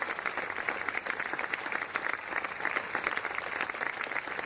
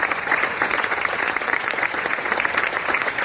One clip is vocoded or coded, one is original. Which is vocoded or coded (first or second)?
second